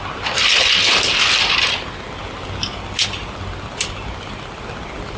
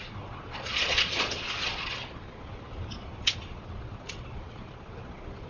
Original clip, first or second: first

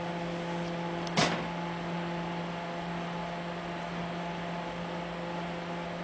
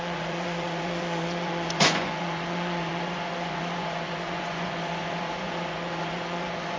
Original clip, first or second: first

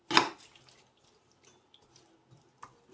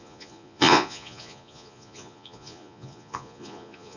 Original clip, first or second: first